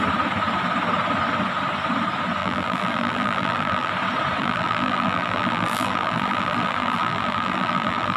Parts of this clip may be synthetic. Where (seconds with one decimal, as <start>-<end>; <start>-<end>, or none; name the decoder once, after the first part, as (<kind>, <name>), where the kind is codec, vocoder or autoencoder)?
2.4-3.9 (vocoder, BigVGAN v2); 4.4-8.2